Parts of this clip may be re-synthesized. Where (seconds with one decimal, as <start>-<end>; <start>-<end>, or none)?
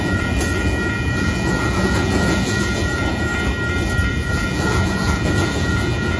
0.0-3.3; 4.1-6.2